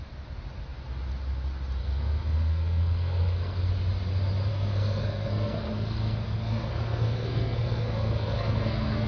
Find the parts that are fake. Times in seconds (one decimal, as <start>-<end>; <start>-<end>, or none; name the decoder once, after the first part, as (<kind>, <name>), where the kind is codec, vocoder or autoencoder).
1.8-3.7 (codec, SNAC); 4.5-9.1